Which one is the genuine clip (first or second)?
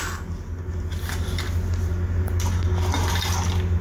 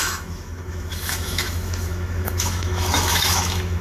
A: first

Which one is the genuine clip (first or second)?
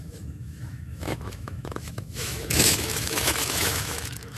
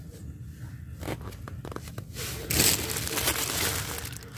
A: second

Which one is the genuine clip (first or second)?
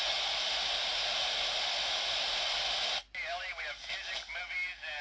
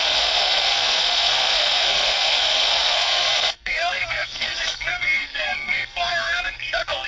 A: first